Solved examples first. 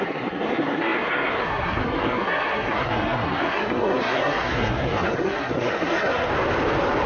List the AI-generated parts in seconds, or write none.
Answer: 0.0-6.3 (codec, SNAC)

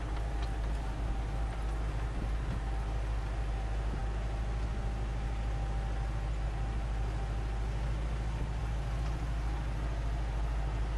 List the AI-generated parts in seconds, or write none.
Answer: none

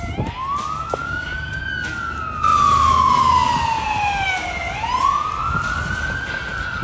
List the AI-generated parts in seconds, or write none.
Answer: 1.0-1.6 (codec, DAC)

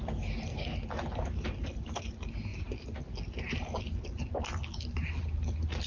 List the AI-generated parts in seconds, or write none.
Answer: none

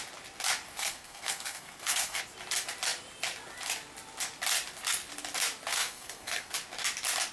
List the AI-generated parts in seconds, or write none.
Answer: 0.7-2.2 (codec, SNAC); 5.7-6.5

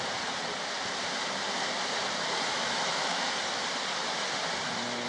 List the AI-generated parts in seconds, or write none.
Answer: 2.5-3.3 (autoencoder, DAC-VAE)

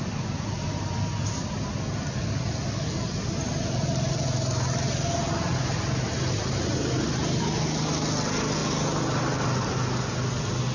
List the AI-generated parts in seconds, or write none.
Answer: none